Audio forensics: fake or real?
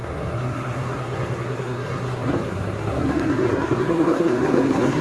fake